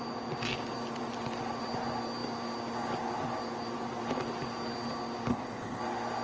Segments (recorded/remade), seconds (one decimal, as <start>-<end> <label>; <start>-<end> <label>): 0.0-5.3 recorded; 5.3-5.8 remade; 5.8-6.2 recorded